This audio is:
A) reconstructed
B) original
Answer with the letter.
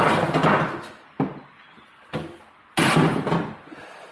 B